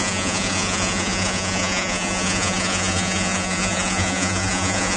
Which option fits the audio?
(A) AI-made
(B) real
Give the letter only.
A